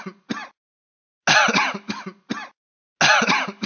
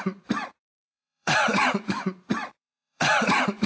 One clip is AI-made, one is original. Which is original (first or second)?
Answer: first